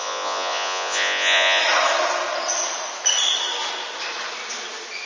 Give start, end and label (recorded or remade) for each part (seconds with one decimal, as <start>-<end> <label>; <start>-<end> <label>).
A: 0.0-1.6 remade; 1.6-5.1 recorded